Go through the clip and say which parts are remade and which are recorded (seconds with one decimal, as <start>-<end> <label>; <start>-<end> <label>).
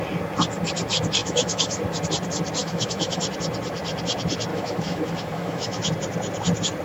0.0-1.2 recorded; 1.2-1.8 remade; 1.8-2.6 recorded; 2.6-3.2 remade; 3.2-4.5 recorded; 4.5-5.9 remade; 5.9-6.8 recorded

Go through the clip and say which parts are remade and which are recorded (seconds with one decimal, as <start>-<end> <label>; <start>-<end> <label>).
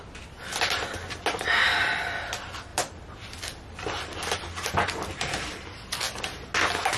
0.0-2.7 recorded; 2.7-6.2 remade; 6.2-7.0 recorded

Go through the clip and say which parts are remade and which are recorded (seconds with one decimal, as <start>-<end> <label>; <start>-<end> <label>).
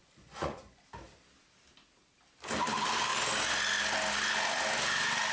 0.0-0.8 remade; 0.8-5.3 recorded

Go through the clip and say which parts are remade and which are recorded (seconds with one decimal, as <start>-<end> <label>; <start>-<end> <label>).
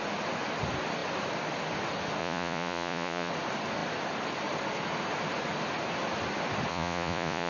0.0-2.2 recorded; 2.2-3.3 remade; 3.3-6.7 recorded; 6.7-7.5 remade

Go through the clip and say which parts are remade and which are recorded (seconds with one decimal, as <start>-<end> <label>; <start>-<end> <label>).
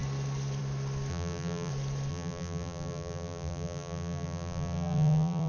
0.0-1.1 recorded; 1.1-1.7 remade; 1.7-2.1 recorded; 2.1-5.5 remade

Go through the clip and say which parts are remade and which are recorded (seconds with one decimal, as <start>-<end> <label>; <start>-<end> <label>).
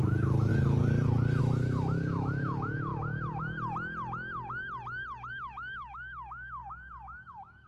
0.0-0.5 remade; 0.5-1.4 recorded; 1.4-2.9 remade; 2.9-5.3 recorded; 5.3-6.6 remade; 6.6-7.3 recorded; 7.3-7.7 remade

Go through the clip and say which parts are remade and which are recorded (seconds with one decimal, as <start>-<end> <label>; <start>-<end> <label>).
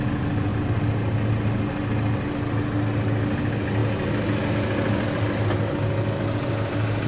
0.0-7.1 recorded